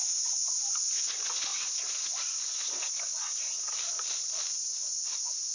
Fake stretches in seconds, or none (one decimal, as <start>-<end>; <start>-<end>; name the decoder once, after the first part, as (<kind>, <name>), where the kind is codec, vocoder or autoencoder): none